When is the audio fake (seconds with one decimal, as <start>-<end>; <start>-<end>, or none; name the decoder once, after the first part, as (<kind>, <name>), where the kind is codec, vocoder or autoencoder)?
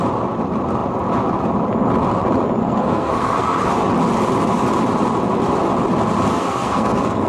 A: 2.6-3.7 (codec, SNAC); 6.3-7.3